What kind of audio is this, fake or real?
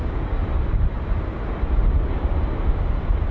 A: real